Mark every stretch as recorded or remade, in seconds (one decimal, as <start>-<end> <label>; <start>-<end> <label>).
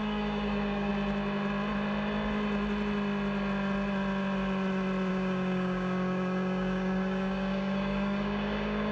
0.0-0.9 remade; 0.9-5.1 recorded; 5.1-8.9 remade